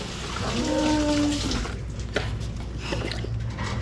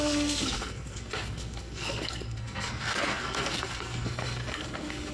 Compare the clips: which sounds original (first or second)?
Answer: first